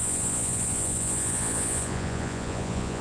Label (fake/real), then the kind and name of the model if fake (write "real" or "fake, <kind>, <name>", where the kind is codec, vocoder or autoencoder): fake, vocoder, Vocos